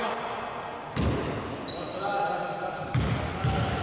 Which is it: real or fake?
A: real